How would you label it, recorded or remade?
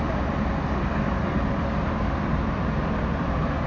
recorded